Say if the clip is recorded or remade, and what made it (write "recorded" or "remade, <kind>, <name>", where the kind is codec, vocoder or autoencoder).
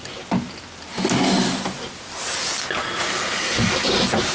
recorded